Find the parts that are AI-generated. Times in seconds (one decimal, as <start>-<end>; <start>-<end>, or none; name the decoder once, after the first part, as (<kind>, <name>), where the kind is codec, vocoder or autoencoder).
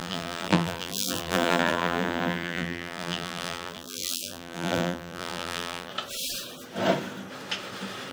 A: 0.0-5.9 (vocoder, BigVGAN v2)